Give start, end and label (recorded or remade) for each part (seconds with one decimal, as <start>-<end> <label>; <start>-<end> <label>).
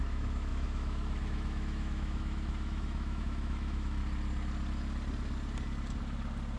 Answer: 0.0-4.0 remade; 4.0-6.6 recorded